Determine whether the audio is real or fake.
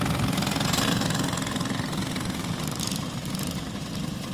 real